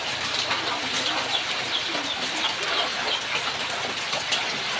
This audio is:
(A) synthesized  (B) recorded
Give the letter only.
B